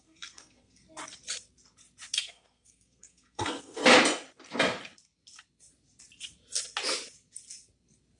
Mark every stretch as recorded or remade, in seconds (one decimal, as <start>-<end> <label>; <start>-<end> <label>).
0.0-0.8 remade; 0.8-2.2 recorded; 2.2-3.8 remade; 3.8-8.2 recorded